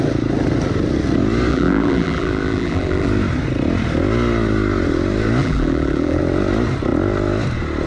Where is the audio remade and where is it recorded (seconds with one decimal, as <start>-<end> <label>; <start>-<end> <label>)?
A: 0.0-1.5 recorded; 1.5-3.1 remade; 3.1-5.4 recorded; 5.4-6.2 remade; 6.2-7.9 recorded

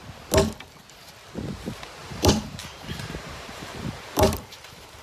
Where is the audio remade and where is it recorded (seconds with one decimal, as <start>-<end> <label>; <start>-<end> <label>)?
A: 0.0-2.0 recorded; 2.0-5.0 remade

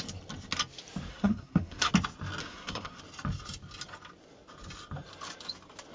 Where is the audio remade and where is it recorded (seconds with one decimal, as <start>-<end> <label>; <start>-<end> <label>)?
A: 0.0-1.1 recorded; 1.1-1.9 remade; 1.9-2.4 recorded; 2.4-3.0 remade; 3.0-5.9 recorded

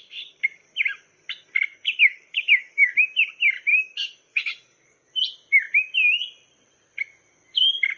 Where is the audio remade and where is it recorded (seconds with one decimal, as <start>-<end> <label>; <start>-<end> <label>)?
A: 0.0-1.7 recorded; 1.7-2.9 remade; 2.9-3.7 recorded; 3.7-5.1 remade; 5.1-8.0 recorded

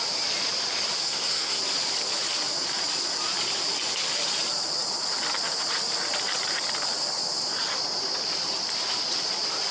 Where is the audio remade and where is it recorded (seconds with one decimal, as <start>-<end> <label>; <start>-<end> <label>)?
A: 0.0-1.0 recorded; 1.0-1.6 remade; 1.6-9.7 recorded

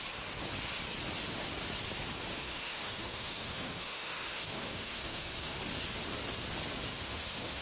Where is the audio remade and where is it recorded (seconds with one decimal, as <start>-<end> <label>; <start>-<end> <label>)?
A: 0.0-2.3 recorded; 2.3-5.6 remade; 5.6-6.9 recorded; 6.9-7.6 remade